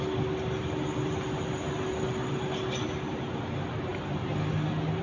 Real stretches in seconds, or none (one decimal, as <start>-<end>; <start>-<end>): 0.0-5.0